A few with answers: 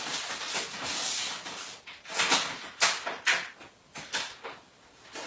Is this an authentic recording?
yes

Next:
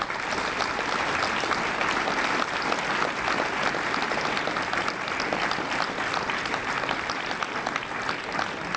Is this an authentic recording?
yes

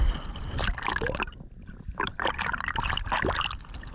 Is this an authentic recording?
yes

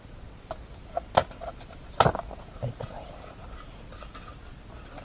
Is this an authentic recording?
yes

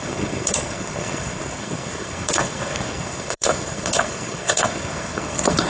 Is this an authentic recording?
no